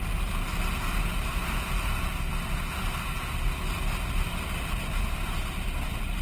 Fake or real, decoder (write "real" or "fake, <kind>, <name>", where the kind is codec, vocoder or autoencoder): real